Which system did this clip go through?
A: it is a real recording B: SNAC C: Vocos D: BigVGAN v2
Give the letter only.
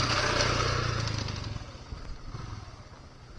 A